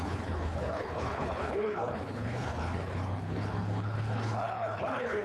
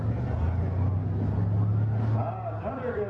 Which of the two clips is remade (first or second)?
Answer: first